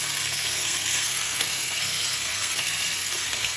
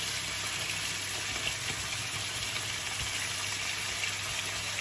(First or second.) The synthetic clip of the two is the first